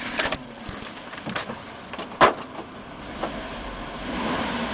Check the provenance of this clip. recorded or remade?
remade